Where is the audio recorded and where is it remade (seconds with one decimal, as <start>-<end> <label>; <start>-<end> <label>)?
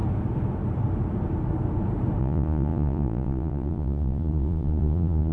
0.0-2.2 recorded; 2.2-5.3 remade